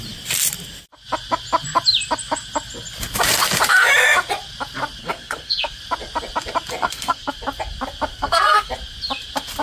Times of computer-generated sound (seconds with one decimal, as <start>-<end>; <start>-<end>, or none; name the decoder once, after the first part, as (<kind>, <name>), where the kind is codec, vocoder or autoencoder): 5.0-5.8 (codec, SNAC); 6.8-7.3; 8.1-8.7